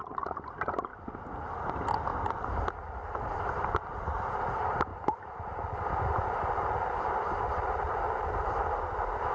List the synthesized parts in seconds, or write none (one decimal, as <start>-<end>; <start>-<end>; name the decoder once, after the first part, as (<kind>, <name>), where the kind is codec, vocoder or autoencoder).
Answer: none